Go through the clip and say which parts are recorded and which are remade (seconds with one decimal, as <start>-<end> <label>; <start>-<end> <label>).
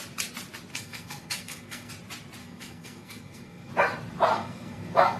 0.0-0.7 recorded; 0.7-1.9 remade; 1.9-2.4 recorded; 2.4-3.7 remade; 3.7-4.3 recorded; 4.3-5.2 remade